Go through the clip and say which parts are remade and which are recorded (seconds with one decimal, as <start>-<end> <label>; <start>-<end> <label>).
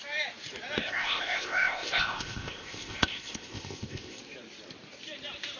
0.0-0.8 recorded; 0.8-4.2 remade; 4.2-5.6 recorded